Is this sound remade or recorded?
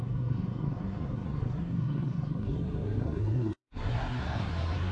remade